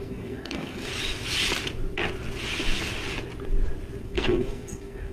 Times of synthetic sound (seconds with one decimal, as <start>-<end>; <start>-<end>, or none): 0.0-0.9; 4.0-5.1